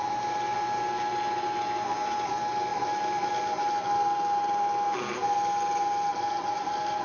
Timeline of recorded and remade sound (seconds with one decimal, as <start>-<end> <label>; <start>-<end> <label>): 0.0-7.0 recorded